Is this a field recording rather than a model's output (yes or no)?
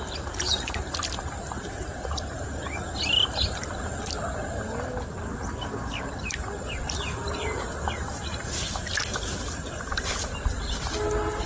yes